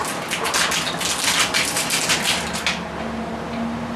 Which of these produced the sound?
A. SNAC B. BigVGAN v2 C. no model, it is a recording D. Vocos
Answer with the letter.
C